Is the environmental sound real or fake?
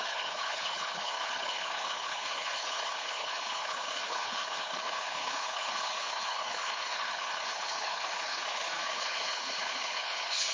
fake